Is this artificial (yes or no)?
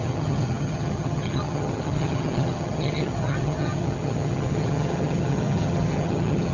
yes